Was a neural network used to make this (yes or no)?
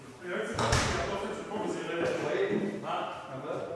yes